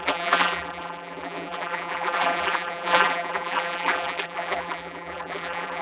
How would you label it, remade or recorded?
remade